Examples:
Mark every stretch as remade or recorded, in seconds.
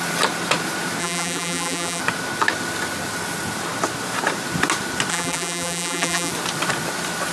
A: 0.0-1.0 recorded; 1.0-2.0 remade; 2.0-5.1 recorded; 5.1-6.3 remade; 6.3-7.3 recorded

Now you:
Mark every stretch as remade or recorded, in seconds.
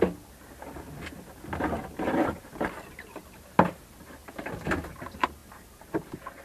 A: 0.0-5.4 recorded; 5.4-6.4 remade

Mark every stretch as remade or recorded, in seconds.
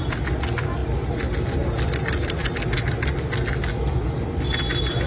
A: 0.0-5.1 recorded